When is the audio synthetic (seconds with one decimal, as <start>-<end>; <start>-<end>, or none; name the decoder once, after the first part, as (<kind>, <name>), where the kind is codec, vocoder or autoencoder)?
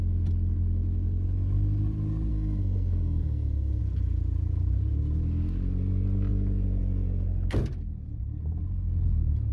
2.3-3.8 (codec, SNAC)